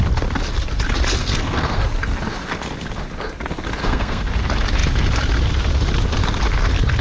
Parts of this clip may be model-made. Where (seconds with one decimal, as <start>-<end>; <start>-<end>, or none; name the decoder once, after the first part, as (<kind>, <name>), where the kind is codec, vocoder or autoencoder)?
1.2-1.8 (codec, SNAC); 3.8-4.3